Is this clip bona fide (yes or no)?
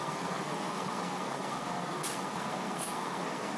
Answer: no